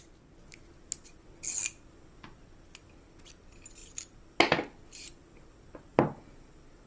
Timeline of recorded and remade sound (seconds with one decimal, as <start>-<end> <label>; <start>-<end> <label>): 0.0-5.9 recorded; 5.9-6.5 remade; 6.5-6.9 recorded